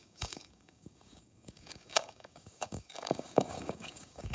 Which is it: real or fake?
fake